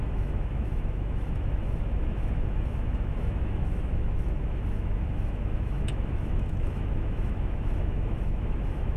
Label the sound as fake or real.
fake